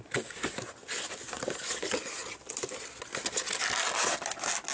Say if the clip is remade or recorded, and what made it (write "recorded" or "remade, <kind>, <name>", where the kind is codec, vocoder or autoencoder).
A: recorded